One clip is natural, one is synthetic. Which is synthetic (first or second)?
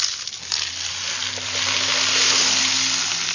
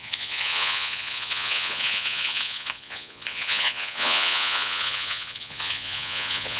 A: second